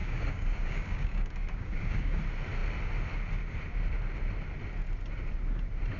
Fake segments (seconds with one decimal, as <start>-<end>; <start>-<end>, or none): 0.0-2.2